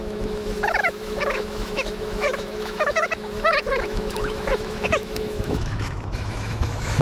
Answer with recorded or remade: remade